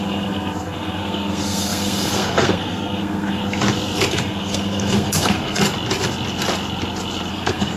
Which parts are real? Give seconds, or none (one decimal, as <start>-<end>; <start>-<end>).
3.4-4.1; 5.6-7.3

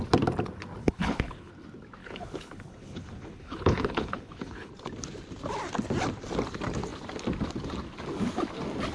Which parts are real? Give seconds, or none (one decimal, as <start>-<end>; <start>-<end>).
0.0-0.8; 1.5-2.0; 4.7-8.9

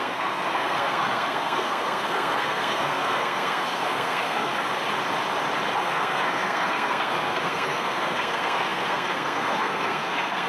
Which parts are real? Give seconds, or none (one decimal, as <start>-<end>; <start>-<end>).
4.5-5.8